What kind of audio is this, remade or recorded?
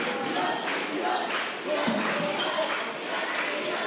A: recorded